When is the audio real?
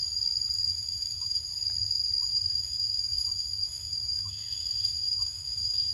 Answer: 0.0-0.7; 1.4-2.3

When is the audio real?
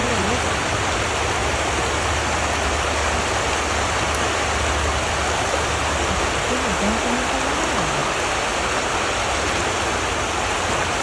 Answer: 0.0-11.0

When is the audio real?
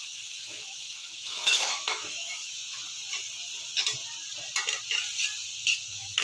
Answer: 2.8-5.8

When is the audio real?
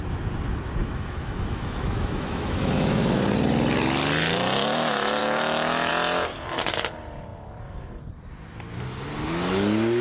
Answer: 0.0-0.8; 3.2-5.2; 5.9-10.0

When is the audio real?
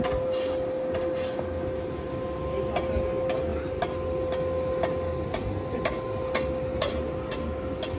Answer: 0.0-8.0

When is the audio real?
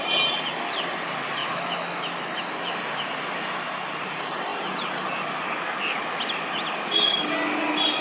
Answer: 0.0-1.4; 2.5-8.0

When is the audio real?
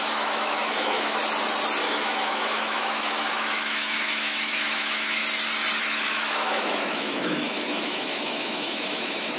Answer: 1.2-1.8; 5.2-5.8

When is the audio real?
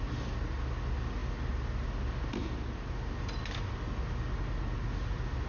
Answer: 0.0-5.5